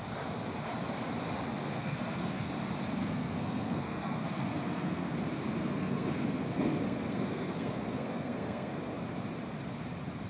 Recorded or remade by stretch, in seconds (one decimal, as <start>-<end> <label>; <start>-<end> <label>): 0.0-1.6 recorded; 1.6-2.5 remade; 2.5-3.0 recorded; 3.0-5.1 remade; 5.1-5.6 recorded; 5.6-8.8 remade; 8.8-10.3 recorded